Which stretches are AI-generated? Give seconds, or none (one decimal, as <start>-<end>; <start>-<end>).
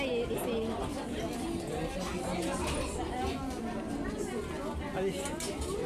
none